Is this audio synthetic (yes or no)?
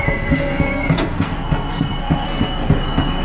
yes